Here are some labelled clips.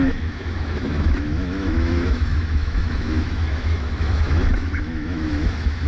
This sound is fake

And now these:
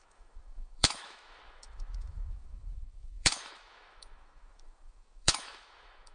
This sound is fake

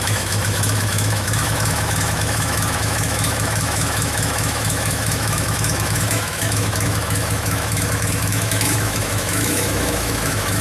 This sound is fake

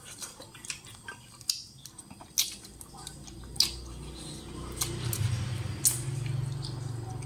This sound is real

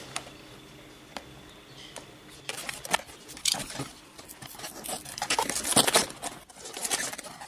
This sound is real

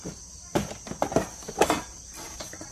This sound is real